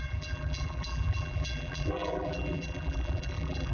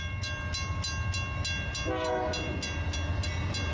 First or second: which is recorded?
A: second